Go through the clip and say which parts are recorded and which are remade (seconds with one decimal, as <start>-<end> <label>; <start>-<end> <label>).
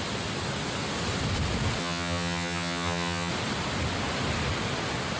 0.0-1.8 recorded; 1.8-3.3 remade; 3.3-5.2 recorded